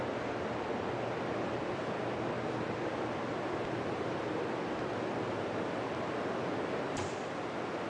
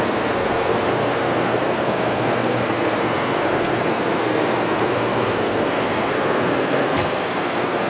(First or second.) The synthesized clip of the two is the second